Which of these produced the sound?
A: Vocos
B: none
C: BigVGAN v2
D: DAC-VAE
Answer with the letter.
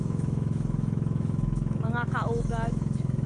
D